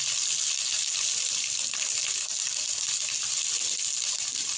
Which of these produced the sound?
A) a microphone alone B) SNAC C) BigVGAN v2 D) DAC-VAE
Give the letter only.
A